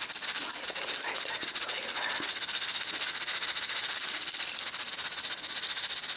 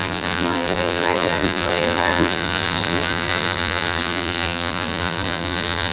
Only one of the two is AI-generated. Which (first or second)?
second